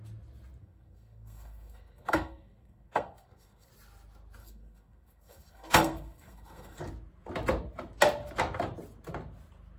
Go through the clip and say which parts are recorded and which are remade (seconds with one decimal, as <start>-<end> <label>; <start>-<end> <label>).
0.0-0.6 recorded; 0.6-3.7 remade; 3.7-4.4 recorded; 4.4-6.8 remade; 6.8-9.8 recorded